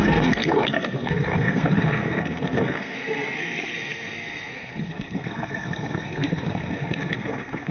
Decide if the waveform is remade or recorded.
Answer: remade